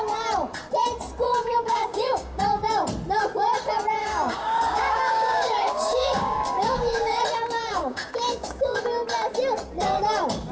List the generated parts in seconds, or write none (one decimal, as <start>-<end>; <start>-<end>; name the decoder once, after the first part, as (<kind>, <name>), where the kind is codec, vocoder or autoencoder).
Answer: 1.3-2.4 (codec, DAC); 4.0-7.2; 7.7-8.8

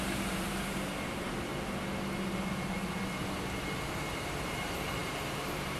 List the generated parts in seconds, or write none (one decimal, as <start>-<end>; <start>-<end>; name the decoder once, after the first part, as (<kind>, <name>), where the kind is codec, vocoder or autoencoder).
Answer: 0.0-1.5 (vocoder, BigVGAN v2); 3.9-5.8

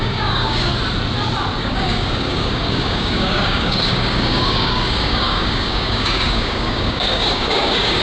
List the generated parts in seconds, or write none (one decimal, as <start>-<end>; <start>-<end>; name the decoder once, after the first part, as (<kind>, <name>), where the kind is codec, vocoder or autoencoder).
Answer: 0.0-0.7 (codec, DAC); 1.6-8.0

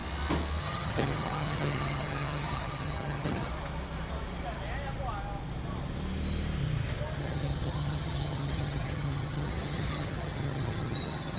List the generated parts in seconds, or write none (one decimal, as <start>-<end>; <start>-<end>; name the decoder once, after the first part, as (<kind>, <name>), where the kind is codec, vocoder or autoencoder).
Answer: 0.6-3.5 (vocoder, HiFi-GAN); 7.2-11.4

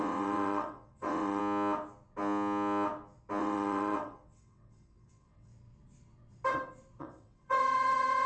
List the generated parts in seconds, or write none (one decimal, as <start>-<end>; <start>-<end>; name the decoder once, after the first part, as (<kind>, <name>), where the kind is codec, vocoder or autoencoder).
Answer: 0.0-1.4 (vocoder, WaveNeXt); 3.4-5.5; 7.0-8.3

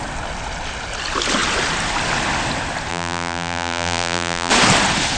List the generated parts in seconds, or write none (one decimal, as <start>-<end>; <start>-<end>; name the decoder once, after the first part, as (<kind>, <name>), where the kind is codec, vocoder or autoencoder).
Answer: 2.9-4.5 (vocoder, BigVGAN v2)

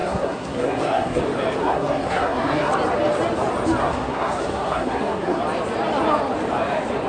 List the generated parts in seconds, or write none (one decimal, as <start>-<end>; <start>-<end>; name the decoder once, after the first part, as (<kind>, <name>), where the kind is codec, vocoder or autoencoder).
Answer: 0.0-1.2 (codec, SNAC); 1.6-2.7; 3.8-5.4